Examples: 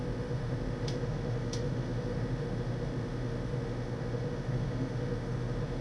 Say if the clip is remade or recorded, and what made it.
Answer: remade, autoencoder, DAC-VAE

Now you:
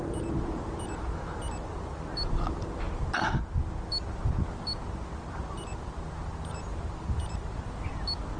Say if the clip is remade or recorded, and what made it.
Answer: recorded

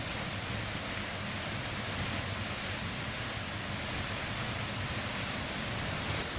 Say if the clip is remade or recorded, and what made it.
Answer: recorded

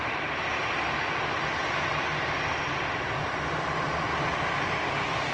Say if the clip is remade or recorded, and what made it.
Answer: recorded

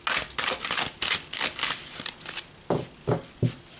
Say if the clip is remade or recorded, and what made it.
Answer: recorded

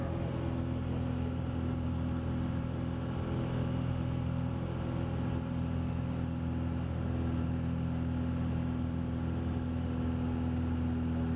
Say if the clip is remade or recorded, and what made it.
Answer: recorded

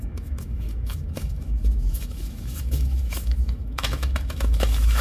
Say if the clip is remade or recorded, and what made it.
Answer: remade, autoencoder, DAC-VAE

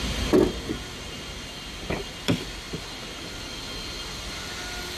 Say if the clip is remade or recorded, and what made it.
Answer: recorded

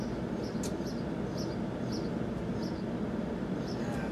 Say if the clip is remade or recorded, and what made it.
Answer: recorded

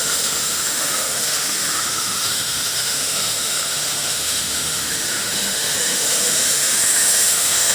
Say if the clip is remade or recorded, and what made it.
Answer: remade, autoencoder, DAC-VAE